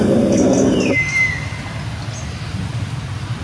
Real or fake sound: real